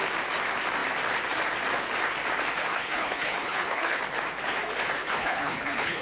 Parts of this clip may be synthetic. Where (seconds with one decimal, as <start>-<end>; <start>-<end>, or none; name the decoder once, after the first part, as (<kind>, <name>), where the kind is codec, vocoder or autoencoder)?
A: 2.6-4.0 (codec, HILCodec); 5.0-6.0